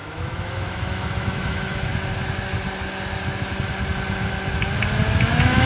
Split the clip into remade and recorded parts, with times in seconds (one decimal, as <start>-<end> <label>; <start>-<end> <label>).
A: 0.0-1.9 remade; 1.9-5.0 recorded; 5.0-5.7 remade